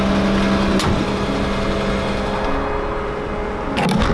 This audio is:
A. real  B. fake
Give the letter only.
A